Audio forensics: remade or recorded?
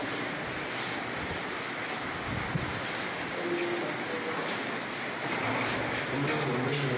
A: recorded